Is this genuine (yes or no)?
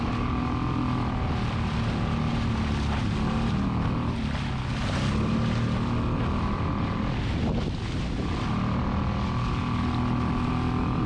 yes